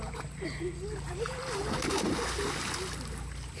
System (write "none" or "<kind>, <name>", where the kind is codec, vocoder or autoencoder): none